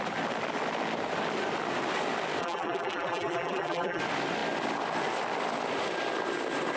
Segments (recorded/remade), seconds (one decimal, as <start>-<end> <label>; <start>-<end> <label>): 0.0-2.4 recorded; 2.4-4.0 remade; 4.0-6.8 recorded